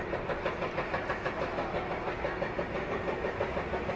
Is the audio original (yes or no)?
yes